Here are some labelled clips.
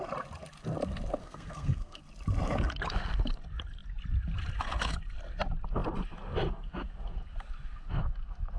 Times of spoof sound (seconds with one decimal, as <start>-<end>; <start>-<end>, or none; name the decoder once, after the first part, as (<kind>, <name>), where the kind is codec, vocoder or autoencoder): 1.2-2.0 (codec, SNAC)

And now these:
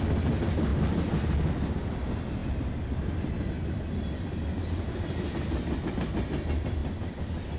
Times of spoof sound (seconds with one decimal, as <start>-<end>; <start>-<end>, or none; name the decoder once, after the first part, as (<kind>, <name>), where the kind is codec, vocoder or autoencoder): none

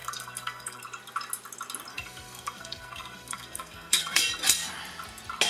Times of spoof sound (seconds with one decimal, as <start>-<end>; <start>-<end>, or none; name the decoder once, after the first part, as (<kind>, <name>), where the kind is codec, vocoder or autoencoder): 0.0-0.8 (codec, SNAC); 1.9-4.2

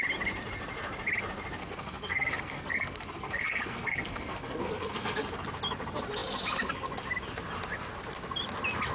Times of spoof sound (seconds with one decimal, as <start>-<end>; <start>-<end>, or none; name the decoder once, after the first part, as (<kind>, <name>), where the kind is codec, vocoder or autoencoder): 1.6-5.2 (codec, SNAC)

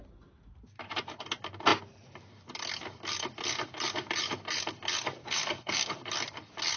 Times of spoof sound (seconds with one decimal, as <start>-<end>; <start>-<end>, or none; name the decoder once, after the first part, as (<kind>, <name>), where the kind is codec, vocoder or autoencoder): 5.2-6.0 (codec, SNAC)

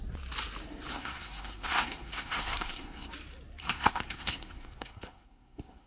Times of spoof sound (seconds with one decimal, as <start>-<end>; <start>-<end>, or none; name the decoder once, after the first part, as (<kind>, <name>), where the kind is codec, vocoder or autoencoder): 0.9-3.1 (codec, SNAC); 3.6-5.9